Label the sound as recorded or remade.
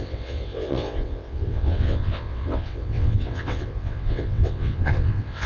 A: remade